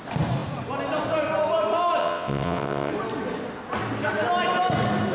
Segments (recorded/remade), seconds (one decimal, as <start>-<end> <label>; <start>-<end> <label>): 0.0-2.0 recorded; 2.0-2.9 remade; 2.9-5.1 recorded